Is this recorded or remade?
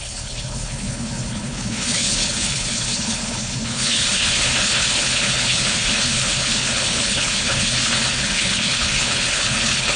remade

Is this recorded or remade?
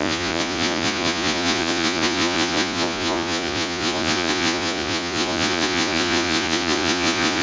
remade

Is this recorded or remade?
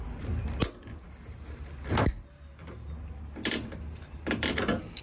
recorded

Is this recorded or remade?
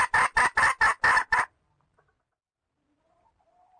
recorded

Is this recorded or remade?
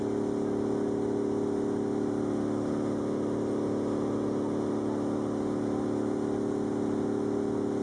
recorded